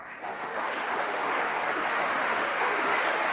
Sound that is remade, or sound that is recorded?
remade